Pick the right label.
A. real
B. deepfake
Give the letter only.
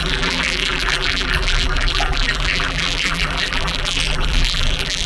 B